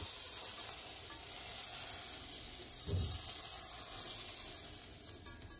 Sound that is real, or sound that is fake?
real